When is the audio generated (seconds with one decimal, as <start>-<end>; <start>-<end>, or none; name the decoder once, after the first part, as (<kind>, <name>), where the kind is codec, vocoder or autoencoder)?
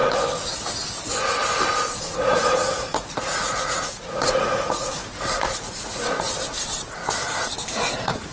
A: 2.0-7.0 (vocoder, Vocos); 7.9-8.3